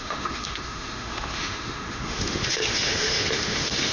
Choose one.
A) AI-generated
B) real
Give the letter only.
A